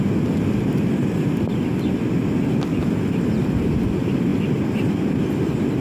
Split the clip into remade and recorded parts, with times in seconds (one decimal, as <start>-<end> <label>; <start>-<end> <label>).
0.0-5.8 recorded